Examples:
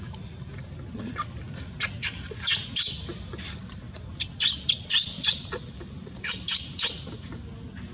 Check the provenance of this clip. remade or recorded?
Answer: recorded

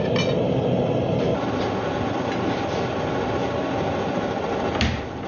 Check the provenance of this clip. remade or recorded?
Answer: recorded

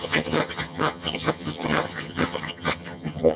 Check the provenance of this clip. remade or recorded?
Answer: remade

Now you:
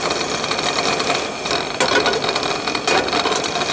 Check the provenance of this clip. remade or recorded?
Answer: recorded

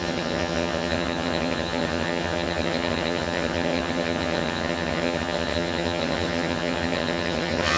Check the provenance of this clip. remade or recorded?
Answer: remade